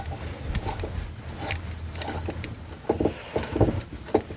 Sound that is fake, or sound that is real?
real